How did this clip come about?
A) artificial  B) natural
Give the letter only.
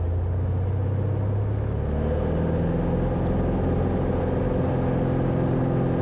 B